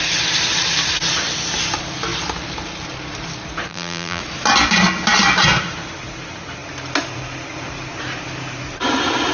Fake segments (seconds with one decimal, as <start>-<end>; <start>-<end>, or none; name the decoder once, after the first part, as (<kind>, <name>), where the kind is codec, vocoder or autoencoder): 3.7-4.2 (vocoder, BigVGAN v2)